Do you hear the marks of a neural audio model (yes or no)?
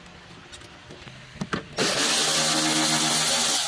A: no